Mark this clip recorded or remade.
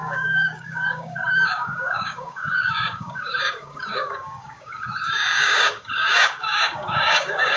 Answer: remade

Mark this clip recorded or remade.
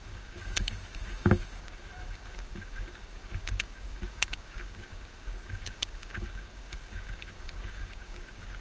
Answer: remade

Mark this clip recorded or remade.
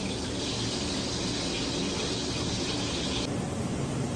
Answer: recorded